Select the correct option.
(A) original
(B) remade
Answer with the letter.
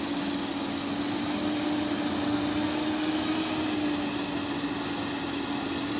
A